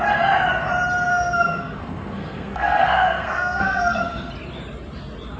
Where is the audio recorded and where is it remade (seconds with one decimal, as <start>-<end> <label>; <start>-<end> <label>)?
0.0-1.1 recorded; 1.1-4.3 remade; 4.3-5.4 recorded